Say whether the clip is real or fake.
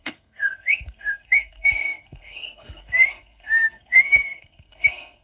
fake